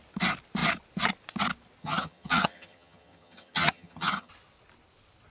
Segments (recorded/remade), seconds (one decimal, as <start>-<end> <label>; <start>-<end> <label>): 0.0-1.8 recorded; 1.8-4.3 remade; 4.3-5.3 recorded